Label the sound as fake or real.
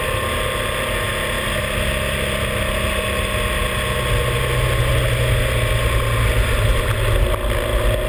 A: real